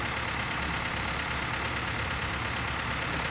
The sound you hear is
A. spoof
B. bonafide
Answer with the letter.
B